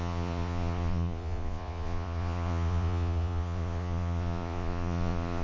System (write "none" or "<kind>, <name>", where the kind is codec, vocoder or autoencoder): vocoder, Vocos